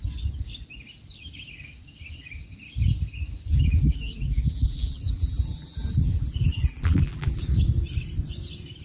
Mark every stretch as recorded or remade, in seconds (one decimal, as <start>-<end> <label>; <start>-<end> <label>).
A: 0.0-3.5 recorded; 3.5-7.4 remade; 7.4-8.8 recorded